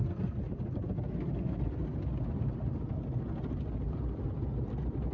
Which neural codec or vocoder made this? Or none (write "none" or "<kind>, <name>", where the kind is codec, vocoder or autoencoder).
none